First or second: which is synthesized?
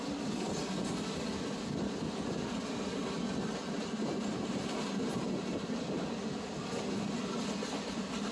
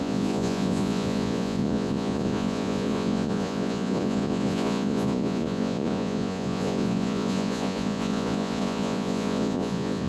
second